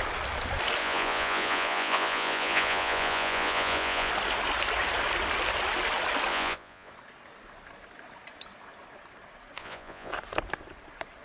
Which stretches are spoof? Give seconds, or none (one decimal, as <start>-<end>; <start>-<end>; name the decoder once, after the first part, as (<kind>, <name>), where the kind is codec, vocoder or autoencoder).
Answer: 0.8-4.1 (vocoder, Vocos); 6.3-6.9; 9.6-10.1

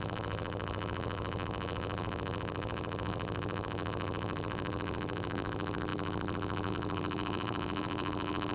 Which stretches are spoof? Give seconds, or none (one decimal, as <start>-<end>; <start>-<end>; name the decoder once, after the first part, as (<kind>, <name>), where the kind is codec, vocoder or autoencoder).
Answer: 0.0-8.5 (vocoder, BigVGAN v2)

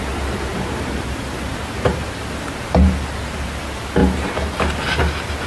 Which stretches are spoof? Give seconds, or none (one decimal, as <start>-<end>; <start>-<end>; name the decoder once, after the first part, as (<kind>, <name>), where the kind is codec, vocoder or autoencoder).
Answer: 0.5-3.6 (vocoder, BigVGAN v2)

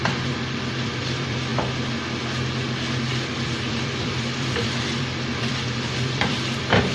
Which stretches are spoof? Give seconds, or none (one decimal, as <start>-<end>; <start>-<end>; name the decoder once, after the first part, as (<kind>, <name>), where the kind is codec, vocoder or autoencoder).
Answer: 0.0-1.5 (vocoder, BigVGAN v2); 3.3-6.9

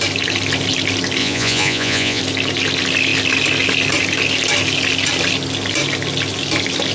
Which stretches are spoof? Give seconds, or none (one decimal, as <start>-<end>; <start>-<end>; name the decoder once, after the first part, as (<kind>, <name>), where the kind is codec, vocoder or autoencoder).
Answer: 1.2-2.2 (vocoder, Vocos)

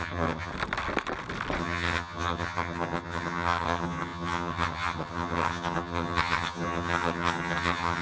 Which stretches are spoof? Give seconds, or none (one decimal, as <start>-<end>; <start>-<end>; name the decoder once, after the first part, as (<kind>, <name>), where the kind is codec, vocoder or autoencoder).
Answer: 0.0-0.5 (vocoder, HiFi-GAN); 1.6-8.0

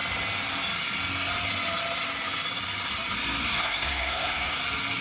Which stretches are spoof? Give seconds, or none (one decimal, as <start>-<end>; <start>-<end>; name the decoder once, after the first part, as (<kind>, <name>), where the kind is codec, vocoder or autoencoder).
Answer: 3.4-4.6 (codec, SNAC)

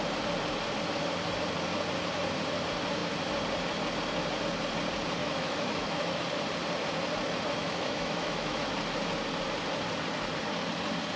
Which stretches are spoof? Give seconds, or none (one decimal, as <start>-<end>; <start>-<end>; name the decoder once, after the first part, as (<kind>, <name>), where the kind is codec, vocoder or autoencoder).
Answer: 5.2-6.2 (autoencoder, DAC-VAE); 7.6-8.7